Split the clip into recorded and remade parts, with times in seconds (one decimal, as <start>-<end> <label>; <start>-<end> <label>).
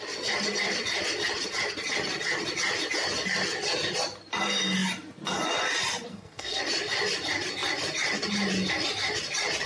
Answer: 0.0-6.1 recorded; 6.1-6.6 remade; 6.6-9.7 recorded